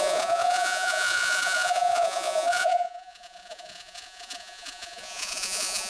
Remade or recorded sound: remade